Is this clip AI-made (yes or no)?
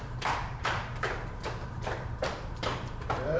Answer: yes